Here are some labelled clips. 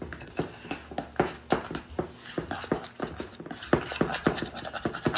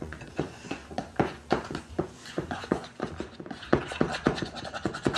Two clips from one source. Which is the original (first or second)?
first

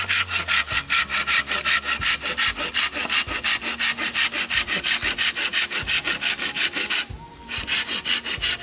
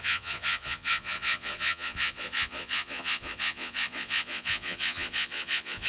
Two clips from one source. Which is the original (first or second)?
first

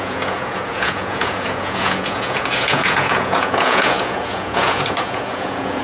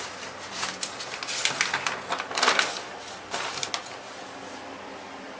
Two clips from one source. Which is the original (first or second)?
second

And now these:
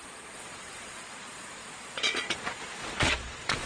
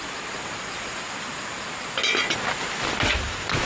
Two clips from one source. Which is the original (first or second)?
second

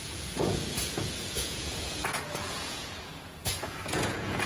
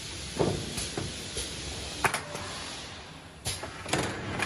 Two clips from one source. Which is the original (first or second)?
second